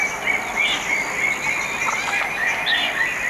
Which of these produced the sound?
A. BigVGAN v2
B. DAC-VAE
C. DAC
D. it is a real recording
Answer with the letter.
D